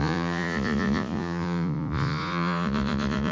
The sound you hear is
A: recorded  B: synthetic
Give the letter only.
B